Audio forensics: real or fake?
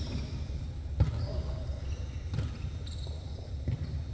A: real